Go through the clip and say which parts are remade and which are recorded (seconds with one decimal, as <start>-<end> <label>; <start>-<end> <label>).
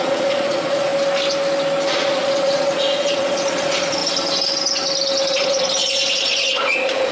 0.0-0.9 remade; 0.9-1.9 recorded; 1.9-4.0 remade; 4.0-5.3 recorded; 5.3-7.1 remade